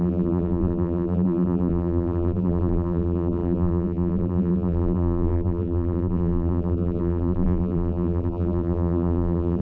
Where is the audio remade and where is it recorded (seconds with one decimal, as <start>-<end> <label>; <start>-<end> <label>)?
0.0-9.6 remade